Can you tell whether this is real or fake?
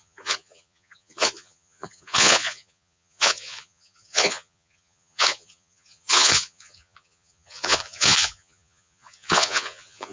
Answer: fake